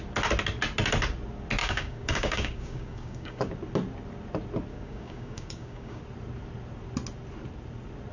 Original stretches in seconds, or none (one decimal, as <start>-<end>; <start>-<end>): 0.0-1.6; 3.5-4.7; 6.0-8.1